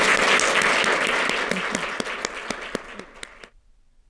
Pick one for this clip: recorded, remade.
recorded